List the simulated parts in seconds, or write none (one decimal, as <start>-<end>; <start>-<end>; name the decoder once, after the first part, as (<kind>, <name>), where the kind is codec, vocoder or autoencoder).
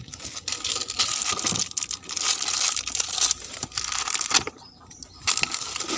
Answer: none